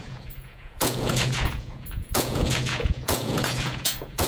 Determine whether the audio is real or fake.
fake